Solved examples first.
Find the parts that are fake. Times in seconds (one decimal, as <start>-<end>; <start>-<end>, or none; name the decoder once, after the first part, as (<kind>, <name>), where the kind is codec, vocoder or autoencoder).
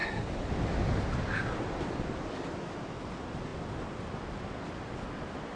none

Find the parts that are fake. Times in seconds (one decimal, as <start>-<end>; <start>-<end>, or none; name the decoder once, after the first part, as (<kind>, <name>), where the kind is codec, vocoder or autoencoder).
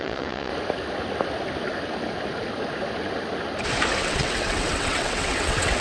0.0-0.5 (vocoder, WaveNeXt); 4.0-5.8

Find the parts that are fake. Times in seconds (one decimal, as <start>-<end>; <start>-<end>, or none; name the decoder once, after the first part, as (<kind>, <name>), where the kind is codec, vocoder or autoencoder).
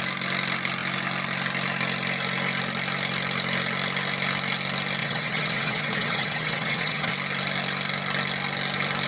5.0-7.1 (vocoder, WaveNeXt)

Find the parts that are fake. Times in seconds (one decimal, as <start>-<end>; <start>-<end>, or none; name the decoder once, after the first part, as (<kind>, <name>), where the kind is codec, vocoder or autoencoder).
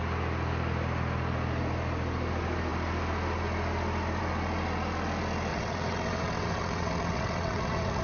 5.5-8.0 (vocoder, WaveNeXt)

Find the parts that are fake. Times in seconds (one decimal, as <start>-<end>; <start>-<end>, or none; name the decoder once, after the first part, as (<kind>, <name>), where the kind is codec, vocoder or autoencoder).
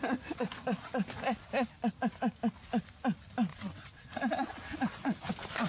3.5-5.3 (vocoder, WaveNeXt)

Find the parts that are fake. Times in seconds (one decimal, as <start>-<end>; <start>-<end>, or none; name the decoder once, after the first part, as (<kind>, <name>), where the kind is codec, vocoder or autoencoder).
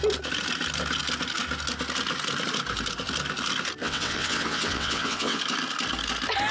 3.8-5.4 (vocoder, WaveNeXt)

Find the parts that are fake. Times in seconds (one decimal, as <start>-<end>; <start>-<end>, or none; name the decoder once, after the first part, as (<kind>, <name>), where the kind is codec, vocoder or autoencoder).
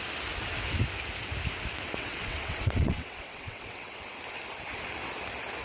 2.0-4.1 (vocoder, WaveNeXt)